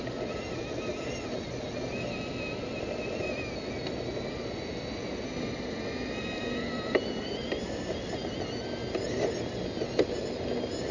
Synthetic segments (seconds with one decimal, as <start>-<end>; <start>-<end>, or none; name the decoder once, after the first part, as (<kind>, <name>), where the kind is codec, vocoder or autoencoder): none

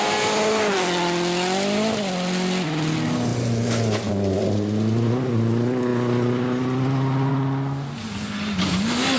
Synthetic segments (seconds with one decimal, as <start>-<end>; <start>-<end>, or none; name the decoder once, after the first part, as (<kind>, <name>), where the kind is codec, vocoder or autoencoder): none

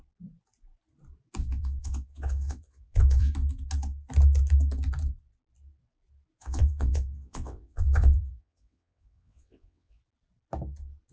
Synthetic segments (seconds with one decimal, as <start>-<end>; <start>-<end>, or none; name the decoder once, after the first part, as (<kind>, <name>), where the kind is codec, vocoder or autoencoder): 1.4-3.3 (vocoder, WaveNeXt); 6.4-10.0

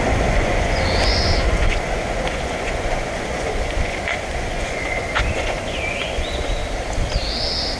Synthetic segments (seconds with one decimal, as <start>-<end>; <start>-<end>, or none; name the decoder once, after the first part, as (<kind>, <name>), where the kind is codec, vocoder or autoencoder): 0.0-6.6 (vocoder, Vocos)

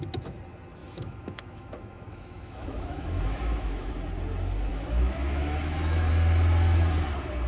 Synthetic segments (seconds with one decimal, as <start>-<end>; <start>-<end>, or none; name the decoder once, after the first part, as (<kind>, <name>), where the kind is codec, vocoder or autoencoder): 0.8-3.9 (autoencoder, DAC-VAE); 4.7-6.1

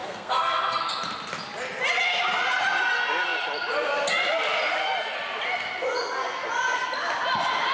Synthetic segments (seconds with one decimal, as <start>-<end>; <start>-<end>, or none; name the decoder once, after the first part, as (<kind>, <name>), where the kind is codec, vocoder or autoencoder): 0.0-0.9 (codec, SNAC)